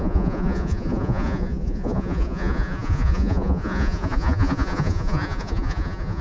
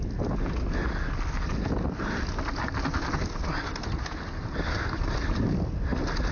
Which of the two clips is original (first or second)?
second